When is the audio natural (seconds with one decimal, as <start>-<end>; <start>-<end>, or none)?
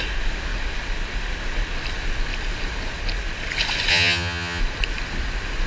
0.0-3.9; 4.6-5.7